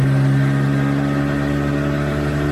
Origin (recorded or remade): recorded